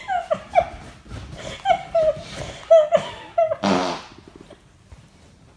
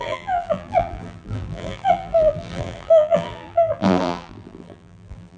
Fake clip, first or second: second